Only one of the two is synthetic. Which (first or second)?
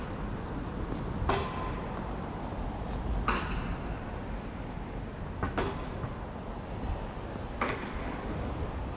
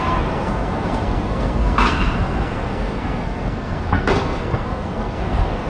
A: second